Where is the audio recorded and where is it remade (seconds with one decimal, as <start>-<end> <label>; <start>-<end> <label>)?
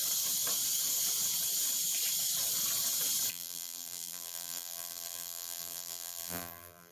0.0-3.3 recorded; 3.3-6.9 remade